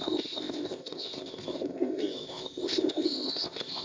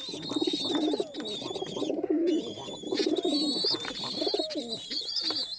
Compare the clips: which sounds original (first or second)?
second